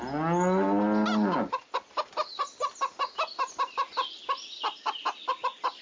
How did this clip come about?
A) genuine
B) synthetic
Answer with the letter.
A